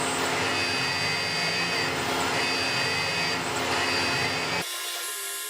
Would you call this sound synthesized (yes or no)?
no